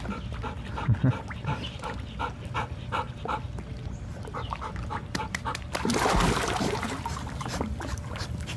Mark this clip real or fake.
real